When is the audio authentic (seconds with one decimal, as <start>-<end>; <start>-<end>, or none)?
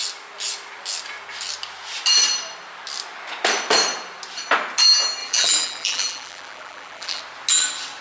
0.0-5.2; 7.2-8.0